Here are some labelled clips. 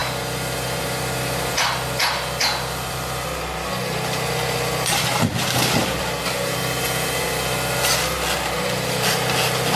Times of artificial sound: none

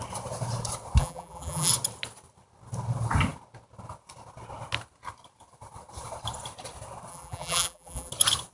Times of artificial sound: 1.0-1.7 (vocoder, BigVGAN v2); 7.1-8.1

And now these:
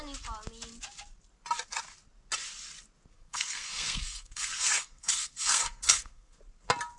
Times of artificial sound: 3.1-6.4 (codec, SNAC)

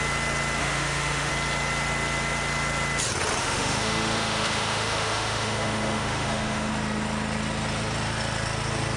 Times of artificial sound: 0.6-1.3 (autoencoder, DAC-VAE); 3.4-6.7